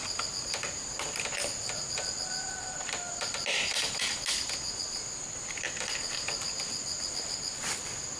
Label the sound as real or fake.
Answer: real